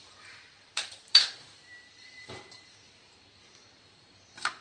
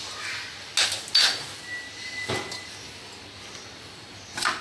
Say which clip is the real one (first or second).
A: second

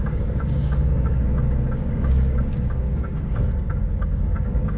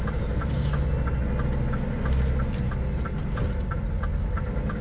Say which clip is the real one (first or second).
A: second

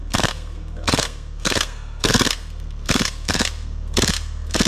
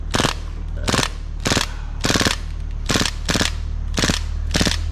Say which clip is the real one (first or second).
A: second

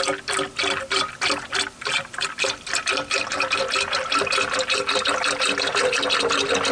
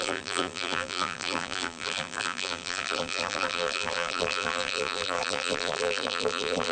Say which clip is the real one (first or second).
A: first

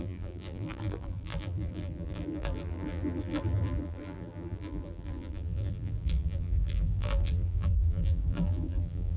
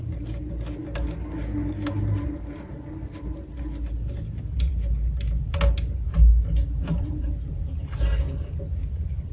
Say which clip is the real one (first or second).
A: second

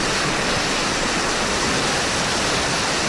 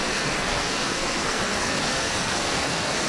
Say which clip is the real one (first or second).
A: first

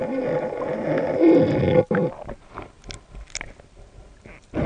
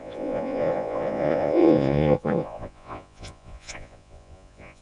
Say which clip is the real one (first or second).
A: first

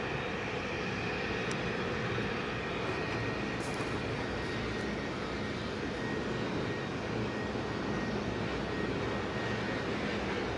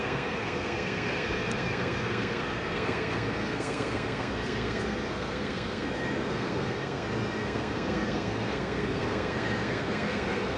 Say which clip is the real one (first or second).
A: first